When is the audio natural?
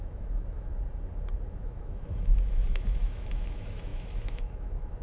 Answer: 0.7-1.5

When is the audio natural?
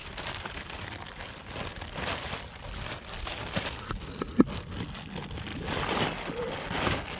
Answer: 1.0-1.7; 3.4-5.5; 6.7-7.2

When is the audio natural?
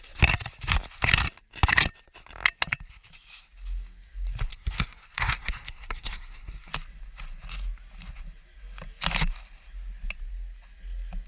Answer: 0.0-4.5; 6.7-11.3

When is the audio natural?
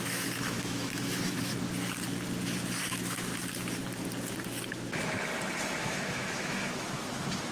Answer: 1.5-2.8; 3.3-5.8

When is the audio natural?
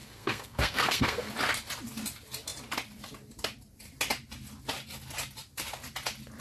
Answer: 1.3-6.4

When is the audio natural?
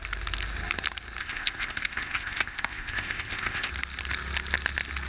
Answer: 0.0-1.2; 3.7-5.1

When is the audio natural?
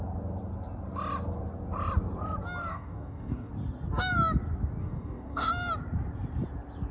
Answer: 0.0-2.7; 3.5-4.8; 5.5-6.9